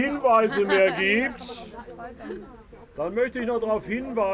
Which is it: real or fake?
real